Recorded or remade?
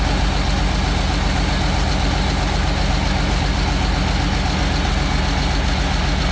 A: recorded